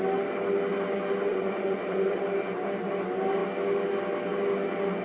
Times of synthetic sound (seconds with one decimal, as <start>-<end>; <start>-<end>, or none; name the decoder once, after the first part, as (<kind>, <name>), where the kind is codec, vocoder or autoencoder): 1.3-2.2 (vocoder, Vocos)